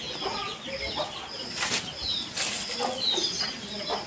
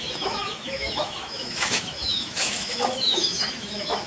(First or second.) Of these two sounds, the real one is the first